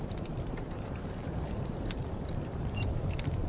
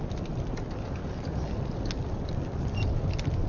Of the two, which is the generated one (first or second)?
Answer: first